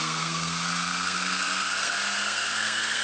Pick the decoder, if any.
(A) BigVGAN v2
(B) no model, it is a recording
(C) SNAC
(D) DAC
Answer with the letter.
C